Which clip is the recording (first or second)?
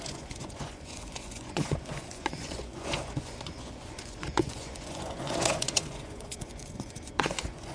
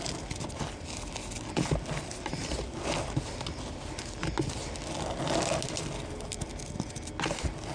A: second